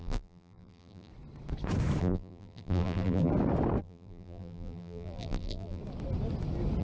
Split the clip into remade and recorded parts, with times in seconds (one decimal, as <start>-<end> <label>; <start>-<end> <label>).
0.0-1.1 remade; 1.1-2.0 recorded; 2.0-3.3 remade; 3.3-3.8 recorded; 3.8-5.8 remade; 5.8-6.8 recorded